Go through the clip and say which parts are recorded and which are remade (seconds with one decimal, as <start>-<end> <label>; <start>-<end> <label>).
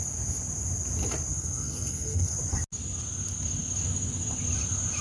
0.0-1.3 recorded; 1.3-2.3 remade; 2.3-5.0 recorded